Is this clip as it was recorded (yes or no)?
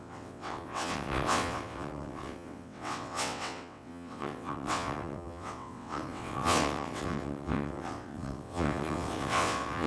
no